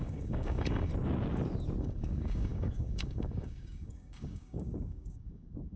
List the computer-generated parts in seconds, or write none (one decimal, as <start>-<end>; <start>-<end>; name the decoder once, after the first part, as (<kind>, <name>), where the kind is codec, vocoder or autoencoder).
0.0-0.9 (codec, DAC); 1.8-5.8